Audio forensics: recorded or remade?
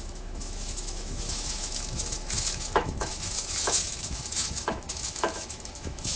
remade